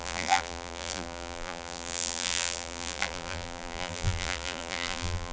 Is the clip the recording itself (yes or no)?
no